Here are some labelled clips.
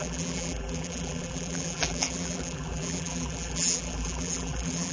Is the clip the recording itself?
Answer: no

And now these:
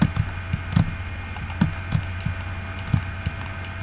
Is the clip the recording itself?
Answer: yes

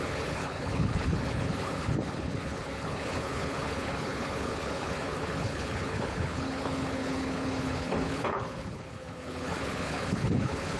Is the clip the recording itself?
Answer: no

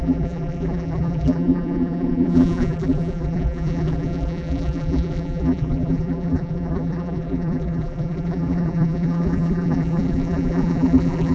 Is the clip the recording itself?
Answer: no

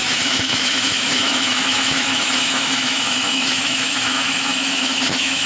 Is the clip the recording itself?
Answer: no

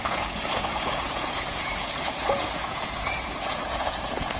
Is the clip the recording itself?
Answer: no